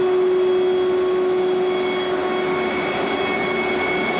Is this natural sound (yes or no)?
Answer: yes